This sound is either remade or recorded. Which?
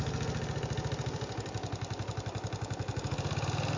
recorded